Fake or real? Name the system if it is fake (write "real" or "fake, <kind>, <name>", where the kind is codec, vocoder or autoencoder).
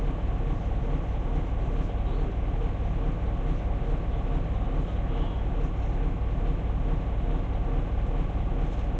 real